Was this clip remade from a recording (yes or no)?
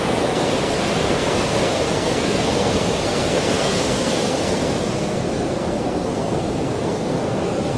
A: yes